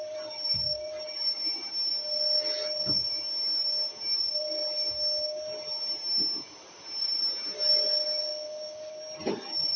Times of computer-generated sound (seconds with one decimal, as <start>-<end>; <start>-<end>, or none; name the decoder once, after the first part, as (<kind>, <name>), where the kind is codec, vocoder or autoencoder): 0.0-4.6 (vocoder, BigVGAN v2); 7.0-9.8